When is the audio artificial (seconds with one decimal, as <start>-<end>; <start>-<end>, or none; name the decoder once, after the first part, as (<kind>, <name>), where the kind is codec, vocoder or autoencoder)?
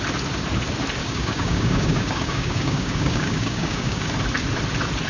1.0-4.1 (codec, DAC)